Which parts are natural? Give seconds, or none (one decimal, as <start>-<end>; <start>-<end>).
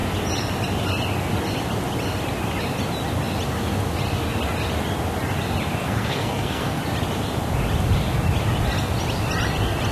0.0-5.8; 6.8-9.9